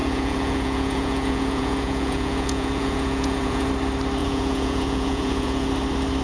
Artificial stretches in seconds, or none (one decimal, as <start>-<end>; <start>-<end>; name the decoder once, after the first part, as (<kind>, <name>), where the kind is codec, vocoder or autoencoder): 0.0-3.7 (vocoder, Vocos); 4.2-5.7